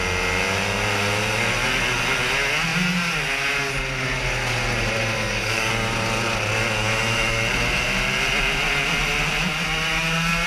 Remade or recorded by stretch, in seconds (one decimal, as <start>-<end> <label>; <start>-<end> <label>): 0.0-5.2 recorded; 5.2-5.7 remade; 5.7-10.5 recorded